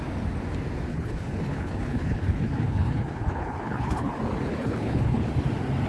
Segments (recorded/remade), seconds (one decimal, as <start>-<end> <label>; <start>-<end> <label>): 0.0-0.9 recorded; 0.9-4.1 remade; 4.1-4.5 recorded; 4.5-5.3 remade; 5.3-5.9 recorded